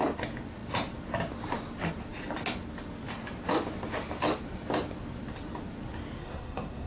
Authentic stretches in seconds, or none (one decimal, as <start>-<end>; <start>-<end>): 0.0-6.2

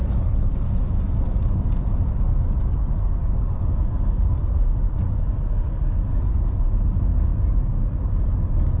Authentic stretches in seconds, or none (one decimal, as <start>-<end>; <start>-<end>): 0.5-8.8

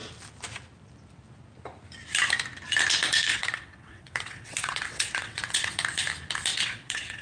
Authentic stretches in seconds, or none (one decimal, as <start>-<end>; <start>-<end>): 0.0-3.3; 5.7-6.5

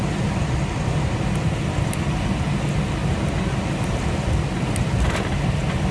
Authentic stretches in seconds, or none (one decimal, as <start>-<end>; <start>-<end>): 0.0-5.9

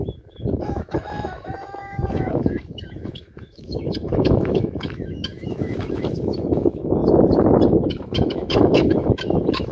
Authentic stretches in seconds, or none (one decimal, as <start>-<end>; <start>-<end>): 7.0-7.9

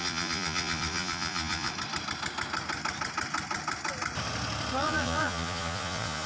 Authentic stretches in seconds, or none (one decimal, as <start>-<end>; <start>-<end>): 1.7-4.8